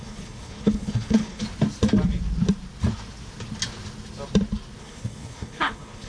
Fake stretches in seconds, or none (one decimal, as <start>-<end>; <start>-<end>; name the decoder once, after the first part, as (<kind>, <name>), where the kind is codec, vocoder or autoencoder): 0.0-1.4 (codec, HILCodec); 4.8-6.1